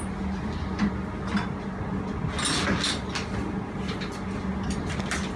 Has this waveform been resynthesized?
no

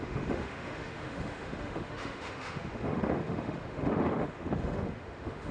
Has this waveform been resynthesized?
yes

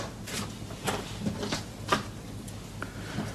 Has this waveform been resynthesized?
no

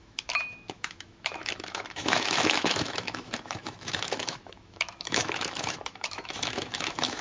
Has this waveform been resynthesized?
yes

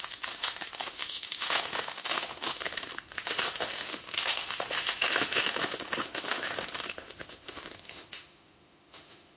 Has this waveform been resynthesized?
yes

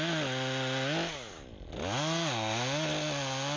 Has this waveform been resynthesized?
no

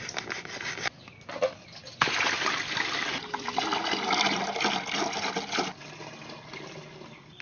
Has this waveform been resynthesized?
no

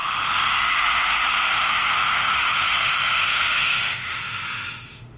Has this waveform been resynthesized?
yes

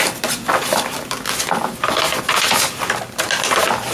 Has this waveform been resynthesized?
no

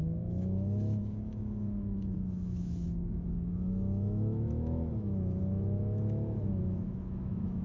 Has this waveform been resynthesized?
yes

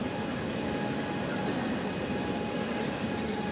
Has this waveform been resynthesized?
no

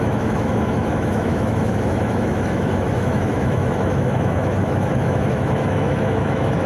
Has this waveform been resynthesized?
yes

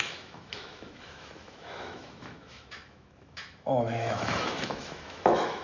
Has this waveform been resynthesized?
yes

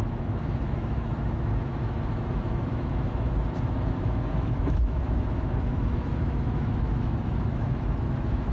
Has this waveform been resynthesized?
yes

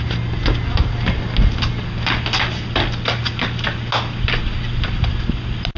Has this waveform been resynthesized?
no